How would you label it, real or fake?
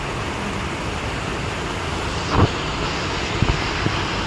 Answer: real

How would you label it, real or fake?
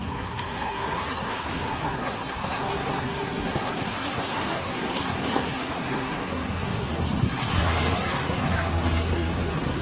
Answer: fake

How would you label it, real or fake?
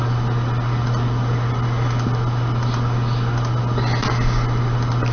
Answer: real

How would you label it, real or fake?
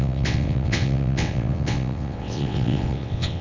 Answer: fake